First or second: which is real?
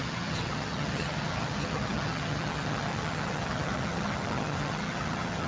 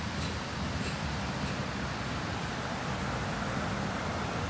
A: second